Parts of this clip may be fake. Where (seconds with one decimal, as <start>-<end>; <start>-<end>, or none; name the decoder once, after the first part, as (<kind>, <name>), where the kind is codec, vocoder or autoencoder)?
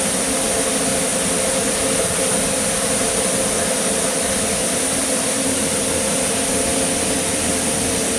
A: none